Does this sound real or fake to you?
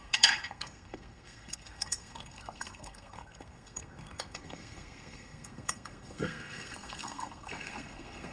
fake